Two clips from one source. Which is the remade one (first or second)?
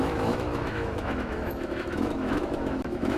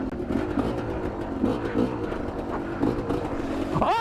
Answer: first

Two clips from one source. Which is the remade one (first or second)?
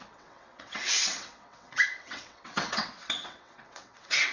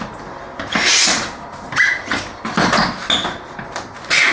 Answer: first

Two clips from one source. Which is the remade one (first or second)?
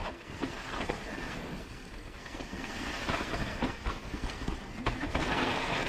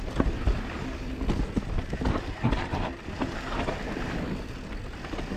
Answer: first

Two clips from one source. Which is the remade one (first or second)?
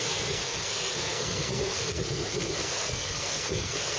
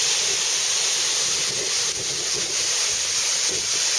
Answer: first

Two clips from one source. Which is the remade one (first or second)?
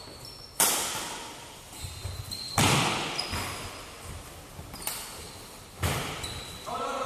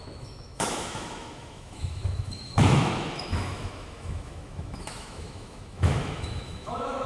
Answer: second